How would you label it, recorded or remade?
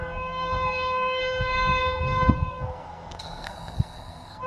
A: remade